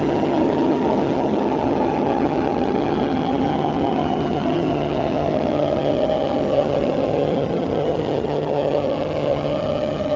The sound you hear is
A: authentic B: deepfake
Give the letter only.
B